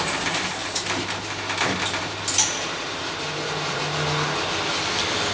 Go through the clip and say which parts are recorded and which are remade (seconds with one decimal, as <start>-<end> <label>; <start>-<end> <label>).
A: 0.0-0.6 recorded; 0.6-3.8 remade; 3.8-5.3 recorded